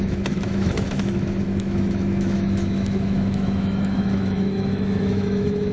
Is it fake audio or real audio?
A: fake